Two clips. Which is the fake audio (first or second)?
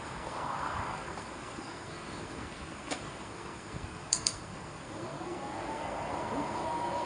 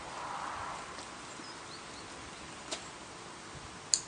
first